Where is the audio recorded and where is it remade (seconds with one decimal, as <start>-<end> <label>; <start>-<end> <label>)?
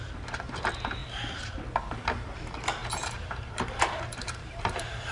0.0-1.0 recorded; 1.0-1.5 remade; 1.5-2.8 recorded; 2.8-5.1 remade